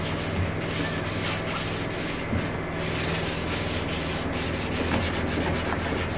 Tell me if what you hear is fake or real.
real